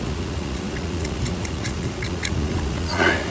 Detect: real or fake fake